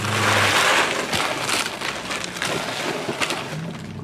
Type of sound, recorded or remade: recorded